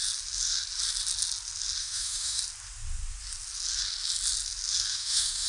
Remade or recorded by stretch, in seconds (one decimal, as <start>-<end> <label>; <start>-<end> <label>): 0.0-1.8 recorded; 1.8-2.4 remade; 2.4-4.9 recorded; 4.9-5.5 remade